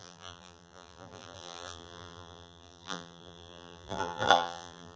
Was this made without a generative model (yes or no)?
no